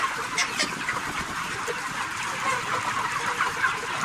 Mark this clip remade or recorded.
recorded